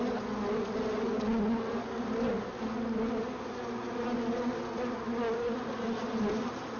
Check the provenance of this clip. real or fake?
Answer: real